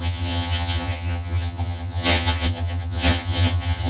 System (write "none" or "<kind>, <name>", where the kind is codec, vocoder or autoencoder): vocoder, HiFi-GAN